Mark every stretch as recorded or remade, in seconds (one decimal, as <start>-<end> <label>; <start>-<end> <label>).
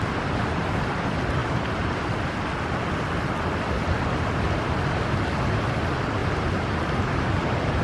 0.0-7.8 recorded